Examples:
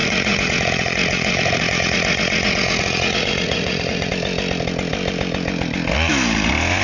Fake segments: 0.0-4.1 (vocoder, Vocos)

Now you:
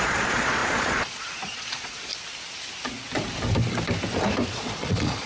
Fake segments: 0.0-2.1 (vocoder, Vocos); 4.5-5.3

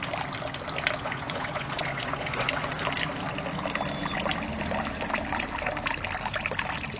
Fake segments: 1.0-2.5 (vocoder, Vocos)

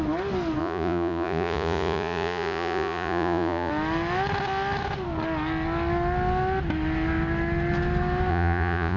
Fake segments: 0.6-3.7 (vocoder, Vocos); 8.3-9.0

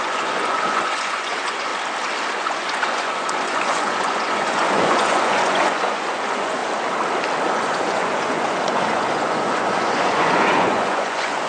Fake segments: 0.0-1.7 (vocoder, Vocos); 2.3-6.6; 7.5-11.5

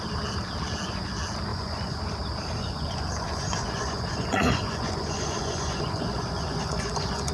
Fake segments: 1.5-2.0 (vocoder, Vocos); 2.6-7.3

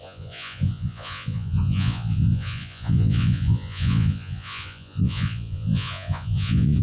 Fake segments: 0.0-6.8 (vocoder, Vocos)